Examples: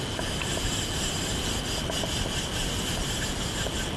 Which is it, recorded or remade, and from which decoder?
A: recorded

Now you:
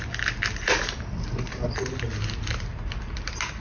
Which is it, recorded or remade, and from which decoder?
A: recorded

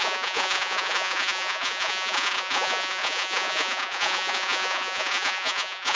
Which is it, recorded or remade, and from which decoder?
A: remade, vocoder, Vocos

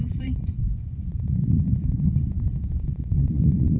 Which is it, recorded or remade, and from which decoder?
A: remade, vocoder, Vocos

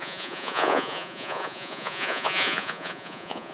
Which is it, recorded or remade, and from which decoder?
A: remade, vocoder, Vocos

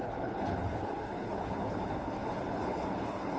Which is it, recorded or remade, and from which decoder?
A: remade, codec, HILCodec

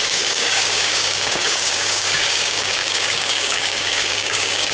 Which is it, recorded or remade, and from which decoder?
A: remade, codec, DAC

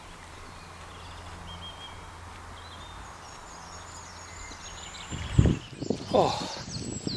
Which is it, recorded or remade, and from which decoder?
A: recorded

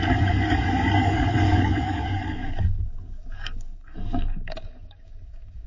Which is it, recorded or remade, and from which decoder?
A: remade, codec, DAC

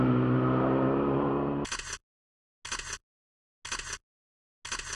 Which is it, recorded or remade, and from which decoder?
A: recorded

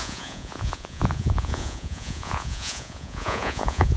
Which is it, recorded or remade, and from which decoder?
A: remade, vocoder, Vocos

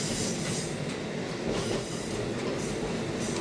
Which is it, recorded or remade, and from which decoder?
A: recorded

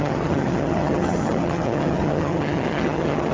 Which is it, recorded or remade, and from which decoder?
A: remade, vocoder, HiFi-GAN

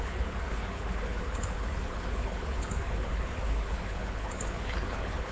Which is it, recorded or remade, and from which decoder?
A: remade, codec, HILCodec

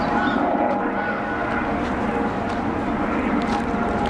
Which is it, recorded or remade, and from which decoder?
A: recorded